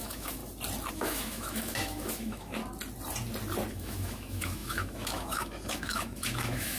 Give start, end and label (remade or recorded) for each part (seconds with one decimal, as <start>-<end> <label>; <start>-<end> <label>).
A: 0.0-0.4 remade; 0.4-0.9 recorded; 0.9-2.6 remade; 2.6-3.7 recorded; 3.7-6.8 remade